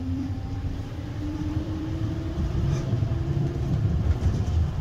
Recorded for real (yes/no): no